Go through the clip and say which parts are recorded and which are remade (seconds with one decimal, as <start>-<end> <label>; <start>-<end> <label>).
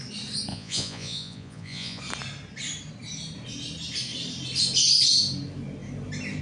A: 0.0-0.5 recorded; 0.5-2.0 remade; 2.0-6.4 recorded